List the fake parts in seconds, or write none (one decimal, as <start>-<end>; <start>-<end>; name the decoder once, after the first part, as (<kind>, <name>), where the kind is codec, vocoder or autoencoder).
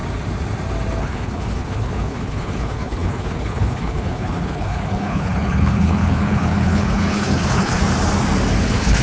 1.0-7.8 (codec, HILCodec); 8.6-9.0